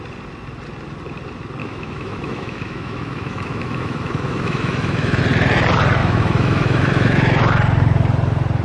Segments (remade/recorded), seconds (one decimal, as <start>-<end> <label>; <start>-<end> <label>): 0.0-1.6 recorded; 1.6-5.2 remade; 5.2-6.0 recorded; 6.0-7.4 remade; 7.4-8.6 recorded